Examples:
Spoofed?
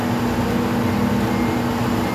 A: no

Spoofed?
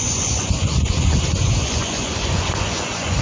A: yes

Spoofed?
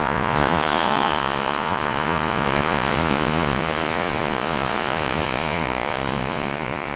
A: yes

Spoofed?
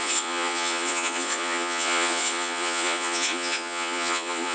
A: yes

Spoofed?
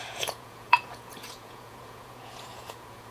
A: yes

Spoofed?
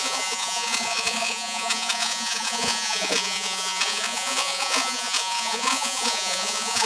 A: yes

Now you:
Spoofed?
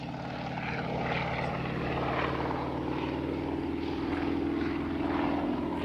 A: no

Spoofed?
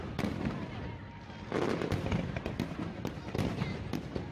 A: yes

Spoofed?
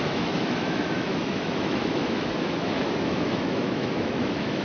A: yes